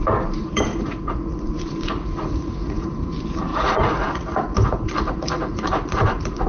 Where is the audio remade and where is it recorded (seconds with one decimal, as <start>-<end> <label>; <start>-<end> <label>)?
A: 0.0-0.7 recorded; 0.7-3.1 remade; 3.1-3.5 recorded; 3.5-6.5 remade

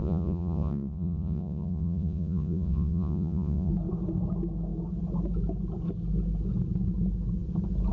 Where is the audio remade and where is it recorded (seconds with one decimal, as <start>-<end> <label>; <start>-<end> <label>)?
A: 0.0-3.7 remade; 3.7-7.9 recorded